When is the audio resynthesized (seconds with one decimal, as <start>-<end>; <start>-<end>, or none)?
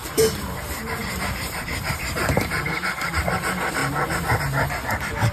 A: 0.0-3.2